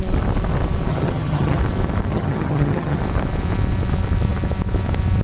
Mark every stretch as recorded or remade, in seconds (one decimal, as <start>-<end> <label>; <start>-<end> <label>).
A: 0.0-0.9 recorded; 0.9-1.6 remade; 1.6-2.1 recorded; 2.1-3.0 remade; 3.0-5.2 recorded